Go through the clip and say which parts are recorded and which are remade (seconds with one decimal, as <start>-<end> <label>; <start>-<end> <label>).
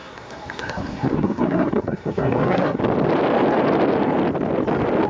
0.0-2.8 remade; 2.8-5.1 recorded